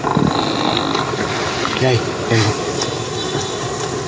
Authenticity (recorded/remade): recorded